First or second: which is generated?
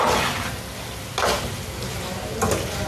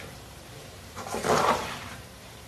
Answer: second